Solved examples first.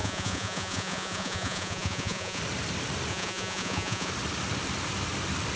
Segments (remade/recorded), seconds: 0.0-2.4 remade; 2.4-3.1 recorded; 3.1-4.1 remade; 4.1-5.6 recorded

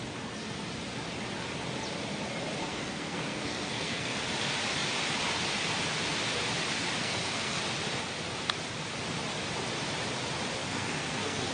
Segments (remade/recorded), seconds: 0.0-2.6 recorded; 2.6-4.2 remade; 4.2-7.0 recorded; 7.0-7.6 remade; 7.6-10.6 recorded; 10.6-11.5 remade